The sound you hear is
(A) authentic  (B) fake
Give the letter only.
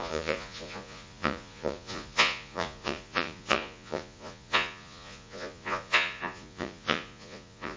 B